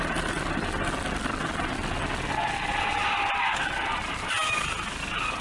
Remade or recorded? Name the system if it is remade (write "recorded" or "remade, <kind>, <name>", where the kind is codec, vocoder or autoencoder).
recorded